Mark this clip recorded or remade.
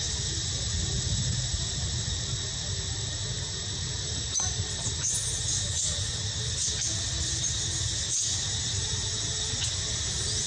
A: recorded